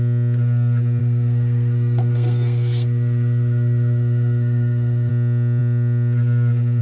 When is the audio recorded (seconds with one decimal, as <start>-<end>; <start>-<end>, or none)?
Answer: 0.0-1.0; 5.1-6.8